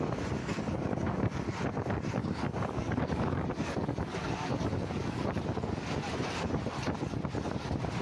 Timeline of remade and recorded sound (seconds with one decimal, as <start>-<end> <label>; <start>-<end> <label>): 0.0-0.4 recorded; 0.4-1.4 remade; 1.4-2.2 recorded; 2.2-5.4 remade; 5.4-8.0 recorded